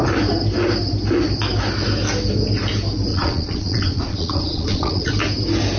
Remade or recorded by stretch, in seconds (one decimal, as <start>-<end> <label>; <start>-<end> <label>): 0.0-3.1 recorded; 3.1-5.1 remade; 5.1-5.8 recorded